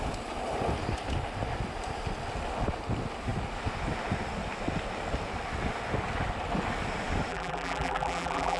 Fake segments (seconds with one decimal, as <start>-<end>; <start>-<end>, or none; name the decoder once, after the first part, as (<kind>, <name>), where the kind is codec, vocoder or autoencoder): 7.3-8.6 (vocoder, BigVGAN v2)